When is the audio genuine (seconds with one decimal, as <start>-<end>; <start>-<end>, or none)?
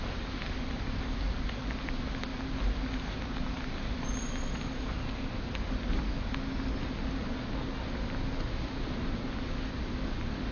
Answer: 0.0-10.5